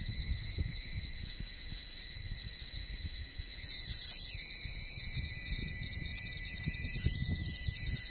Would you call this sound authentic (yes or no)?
no